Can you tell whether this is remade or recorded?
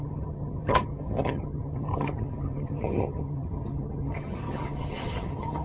remade